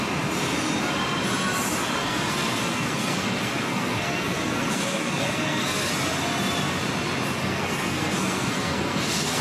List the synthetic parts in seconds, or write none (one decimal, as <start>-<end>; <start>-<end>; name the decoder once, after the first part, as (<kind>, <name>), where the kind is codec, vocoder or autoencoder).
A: 2.0-5.9 (codec, SNAC); 7.4-9.4